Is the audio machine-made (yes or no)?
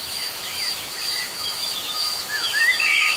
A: yes